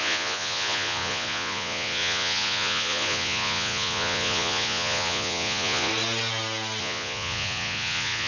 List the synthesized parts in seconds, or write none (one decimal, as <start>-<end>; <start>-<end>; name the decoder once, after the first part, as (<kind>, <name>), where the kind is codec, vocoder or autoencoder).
0.0-5.9 (vocoder, Vocos); 6.8-8.3

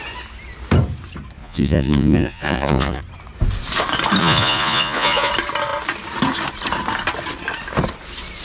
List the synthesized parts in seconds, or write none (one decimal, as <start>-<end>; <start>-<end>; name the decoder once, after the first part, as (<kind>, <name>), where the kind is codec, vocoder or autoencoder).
1.4-3.0 (vocoder, Vocos); 4.2-5.3

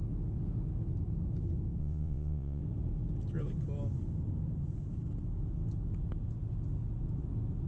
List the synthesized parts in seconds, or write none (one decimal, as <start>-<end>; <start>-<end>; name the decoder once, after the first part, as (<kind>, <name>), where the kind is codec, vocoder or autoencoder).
1.8-2.6 (vocoder, Vocos)

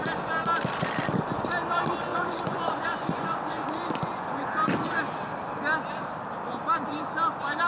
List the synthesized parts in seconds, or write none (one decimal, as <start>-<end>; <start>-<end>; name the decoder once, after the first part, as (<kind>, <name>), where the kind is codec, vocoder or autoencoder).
2.1-4.5 (vocoder, Vocos)